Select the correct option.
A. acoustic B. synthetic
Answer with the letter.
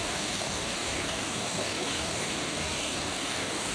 B